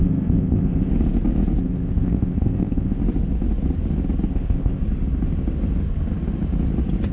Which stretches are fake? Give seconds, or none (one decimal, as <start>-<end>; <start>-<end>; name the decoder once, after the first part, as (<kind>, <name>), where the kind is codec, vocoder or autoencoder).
0.0-0.9 (codec, ZipCodec); 1.6-3.0; 4.3-4.8